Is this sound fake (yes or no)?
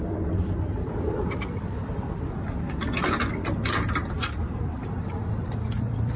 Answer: yes